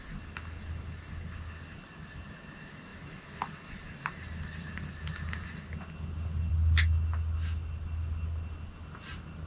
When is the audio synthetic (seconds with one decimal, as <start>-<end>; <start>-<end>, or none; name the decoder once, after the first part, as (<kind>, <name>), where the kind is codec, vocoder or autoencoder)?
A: none